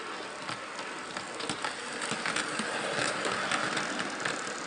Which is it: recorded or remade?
recorded